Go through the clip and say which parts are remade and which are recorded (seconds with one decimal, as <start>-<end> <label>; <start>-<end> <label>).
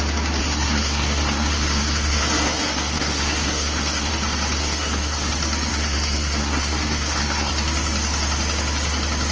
0.0-0.4 recorded; 0.4-4.1 remade; 4.1-4.6 recorded; 4.6-5.3 remade; 5.3-5.7 recorded; 5.7-7.5 remade; 7.5-9.3 recorded